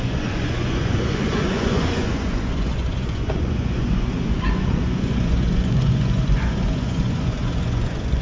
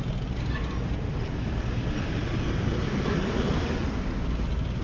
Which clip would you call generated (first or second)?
first